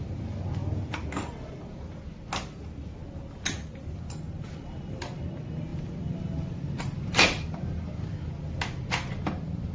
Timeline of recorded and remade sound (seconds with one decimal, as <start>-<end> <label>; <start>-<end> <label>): 0.0-9.7 recorded